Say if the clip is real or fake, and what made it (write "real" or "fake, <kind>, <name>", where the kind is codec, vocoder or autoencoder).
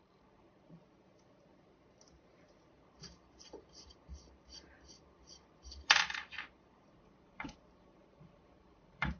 fake, vocoder, BigVGAN v2